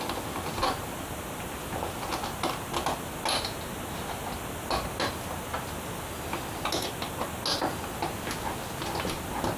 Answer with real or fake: real